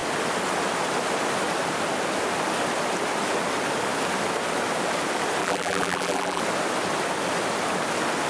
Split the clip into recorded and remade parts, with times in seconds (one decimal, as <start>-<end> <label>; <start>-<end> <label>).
0.0-5.4 recorded; 5.4-6.4 remade; 6.4-8.3 recorded